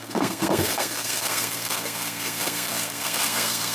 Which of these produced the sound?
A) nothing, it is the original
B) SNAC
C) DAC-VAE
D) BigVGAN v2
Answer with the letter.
B